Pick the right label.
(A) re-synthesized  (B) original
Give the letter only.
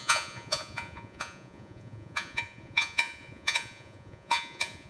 A